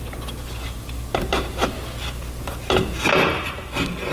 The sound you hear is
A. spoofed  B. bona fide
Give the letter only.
B